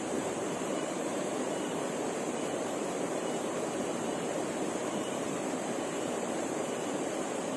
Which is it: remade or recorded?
remade